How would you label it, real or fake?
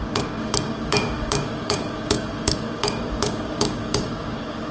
fake